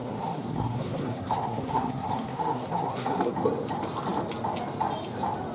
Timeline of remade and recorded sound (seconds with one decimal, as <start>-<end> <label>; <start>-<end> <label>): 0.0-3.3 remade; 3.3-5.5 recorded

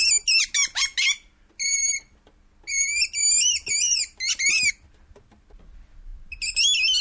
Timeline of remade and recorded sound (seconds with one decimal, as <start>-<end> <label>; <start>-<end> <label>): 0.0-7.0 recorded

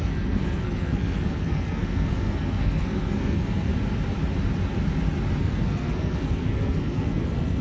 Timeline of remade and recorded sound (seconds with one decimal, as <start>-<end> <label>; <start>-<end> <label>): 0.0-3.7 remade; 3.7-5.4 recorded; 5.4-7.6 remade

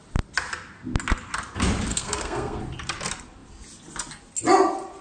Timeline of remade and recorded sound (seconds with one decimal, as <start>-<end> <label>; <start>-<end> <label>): 0.0-1.9 recorded; 1.9-2.6 remade; 2.6-5.0 recorded